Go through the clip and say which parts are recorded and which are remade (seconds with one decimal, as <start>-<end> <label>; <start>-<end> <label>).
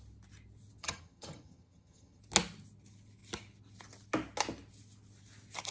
0.0-0.8 recorded; 0.8-2.2 remade; 2.2-5.7 recorded